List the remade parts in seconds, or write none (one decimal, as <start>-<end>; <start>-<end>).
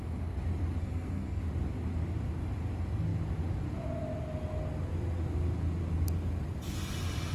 0.8-1.4